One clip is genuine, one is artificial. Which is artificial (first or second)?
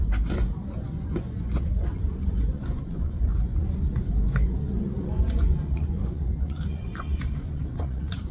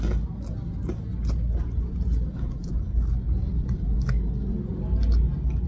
first